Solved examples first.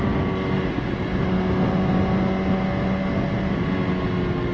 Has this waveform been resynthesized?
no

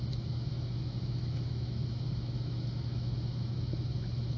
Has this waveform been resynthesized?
yes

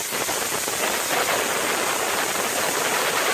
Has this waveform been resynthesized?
no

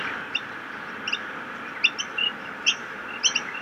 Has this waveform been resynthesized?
no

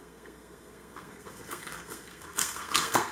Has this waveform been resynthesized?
yes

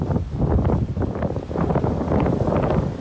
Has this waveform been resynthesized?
no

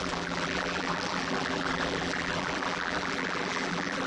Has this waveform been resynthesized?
yes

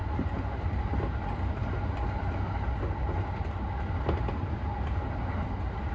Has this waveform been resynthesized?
no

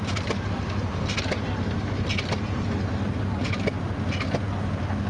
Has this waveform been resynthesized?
no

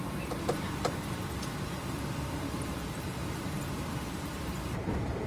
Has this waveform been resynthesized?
yes